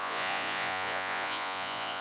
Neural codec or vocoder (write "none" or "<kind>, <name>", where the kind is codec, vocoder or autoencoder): vocoder, Vocos